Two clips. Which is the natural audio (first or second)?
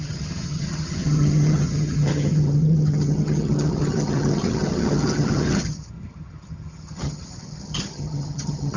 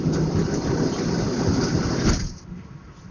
second